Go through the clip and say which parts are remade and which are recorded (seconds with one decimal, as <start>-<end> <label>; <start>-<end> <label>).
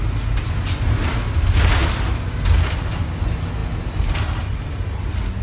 0.0-5.4 recorded